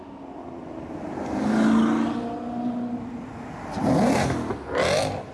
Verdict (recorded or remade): recorded